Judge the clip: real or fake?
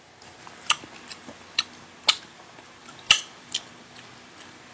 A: real